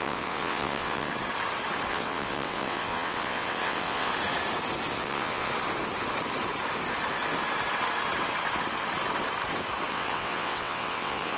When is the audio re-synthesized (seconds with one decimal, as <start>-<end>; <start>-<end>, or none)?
0.0-1.1; 1.9-4.1; 4.9-5.5; 9.9-11.4